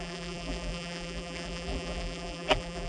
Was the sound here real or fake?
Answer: fake